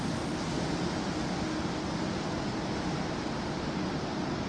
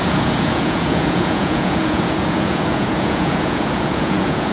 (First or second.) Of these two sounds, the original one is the first